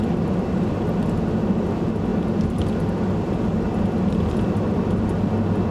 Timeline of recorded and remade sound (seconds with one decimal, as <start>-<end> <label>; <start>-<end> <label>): 0.0-5.7 recorded